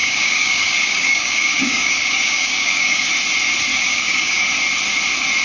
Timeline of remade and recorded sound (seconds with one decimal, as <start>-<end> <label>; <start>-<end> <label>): 0.0-3.1 remade; 3.1-3.7 recorded; 3.7-4.4 remade; 4.4-5.4 recorded